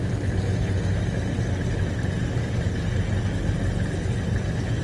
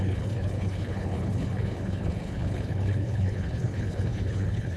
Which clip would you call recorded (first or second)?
first